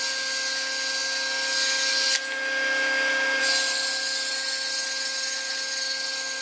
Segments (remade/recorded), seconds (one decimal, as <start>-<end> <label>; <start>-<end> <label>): 0.0-6.4 recorded